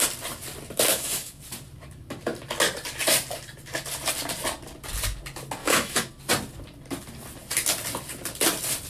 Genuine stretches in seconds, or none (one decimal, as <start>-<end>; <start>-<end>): 0.0-0.9; 1.4-5.6; 6.1-8.9